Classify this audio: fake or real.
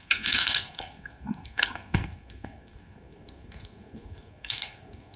fake